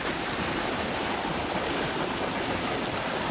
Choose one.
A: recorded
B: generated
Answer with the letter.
A